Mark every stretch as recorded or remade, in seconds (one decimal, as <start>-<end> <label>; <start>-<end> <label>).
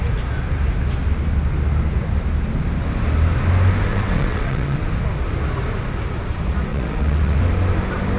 0.0-3.9 recorded; 3.9-4.9 remade; 4.9-6.7 recorded; 6.7-7.4 remade; 7.4-8.2 recorded